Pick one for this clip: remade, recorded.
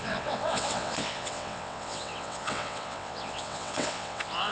remade